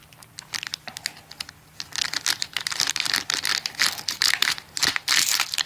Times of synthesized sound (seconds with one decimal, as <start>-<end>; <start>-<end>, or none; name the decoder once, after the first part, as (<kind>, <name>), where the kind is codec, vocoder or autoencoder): 2.9-3.5 (vocoder, BigVGAN v2); 4.1-5.7

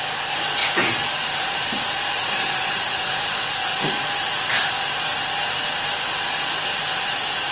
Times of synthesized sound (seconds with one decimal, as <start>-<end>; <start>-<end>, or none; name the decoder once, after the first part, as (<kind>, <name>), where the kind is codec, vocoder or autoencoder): 0.6-5.1 (vocoder, BigVGAN v2); 6.6-7.5

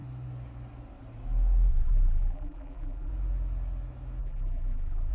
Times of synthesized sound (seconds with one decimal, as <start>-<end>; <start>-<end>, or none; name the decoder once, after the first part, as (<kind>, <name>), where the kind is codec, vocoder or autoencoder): 1.7-3.1 (vocoder, BigVGAN v2); 4.2-5.1

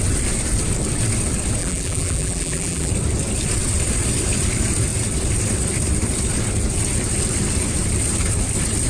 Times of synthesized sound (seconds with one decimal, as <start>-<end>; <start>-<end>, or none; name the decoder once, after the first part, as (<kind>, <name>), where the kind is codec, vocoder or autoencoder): 1.6-2.9 (vocoder, BigVGAN v2)

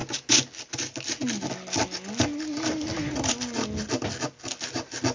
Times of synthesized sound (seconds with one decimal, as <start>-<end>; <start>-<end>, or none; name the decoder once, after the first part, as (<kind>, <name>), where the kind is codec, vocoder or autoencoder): none

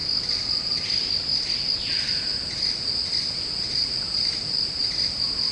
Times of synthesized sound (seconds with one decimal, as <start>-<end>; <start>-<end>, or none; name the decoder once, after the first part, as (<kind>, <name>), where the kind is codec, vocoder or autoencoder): 0.0-2.3 (vocoder, BigVGAN v2); 3.8-5.5

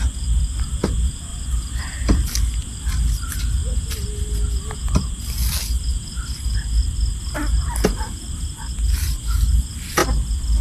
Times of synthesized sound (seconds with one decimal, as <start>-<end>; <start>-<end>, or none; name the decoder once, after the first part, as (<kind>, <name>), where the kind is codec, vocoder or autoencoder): 1.3-1.8 (vocoder, BigVGAN v2)

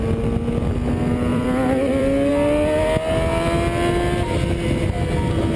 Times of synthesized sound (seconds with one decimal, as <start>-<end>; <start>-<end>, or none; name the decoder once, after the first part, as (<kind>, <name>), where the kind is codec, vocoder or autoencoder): 1.3-2.3 (vocoder, BigVGAN v2)